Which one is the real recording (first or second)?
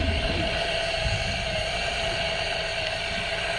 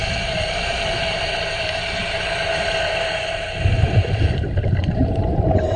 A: first